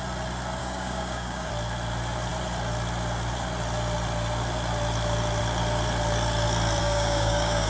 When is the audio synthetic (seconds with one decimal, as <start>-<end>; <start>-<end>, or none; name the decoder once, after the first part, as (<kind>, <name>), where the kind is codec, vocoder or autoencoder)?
0.6-1.5 (codec, DAC); 6.8-7.7